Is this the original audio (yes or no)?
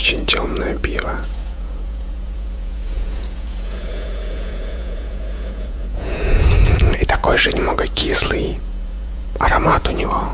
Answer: no